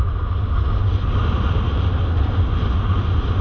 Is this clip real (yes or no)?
yes